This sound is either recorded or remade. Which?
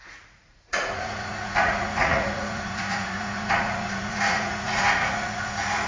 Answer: remade